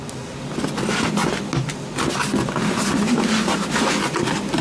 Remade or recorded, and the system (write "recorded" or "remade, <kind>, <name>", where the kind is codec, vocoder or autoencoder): recorded